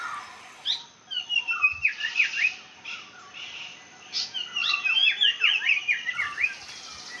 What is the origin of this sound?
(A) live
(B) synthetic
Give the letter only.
A